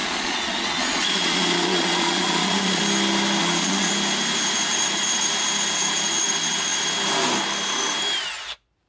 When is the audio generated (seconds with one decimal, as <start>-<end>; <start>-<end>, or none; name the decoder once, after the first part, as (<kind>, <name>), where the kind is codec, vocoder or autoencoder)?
0.0-2.8 (vocoder, Vocos); 3.4-3.9